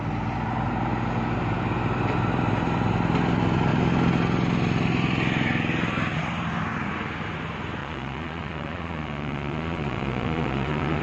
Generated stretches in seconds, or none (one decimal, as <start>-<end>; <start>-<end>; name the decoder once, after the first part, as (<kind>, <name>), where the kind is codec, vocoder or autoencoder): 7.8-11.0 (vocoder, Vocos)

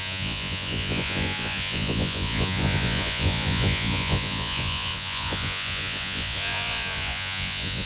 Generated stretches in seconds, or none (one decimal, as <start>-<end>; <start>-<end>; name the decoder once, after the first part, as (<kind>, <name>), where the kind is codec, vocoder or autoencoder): 0.0-7.9 (vocoder, Vocos)

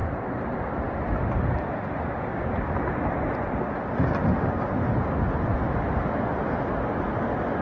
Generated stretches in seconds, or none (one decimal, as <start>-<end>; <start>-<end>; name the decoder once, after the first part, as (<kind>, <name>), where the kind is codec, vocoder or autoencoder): none